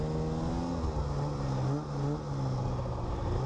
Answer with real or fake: real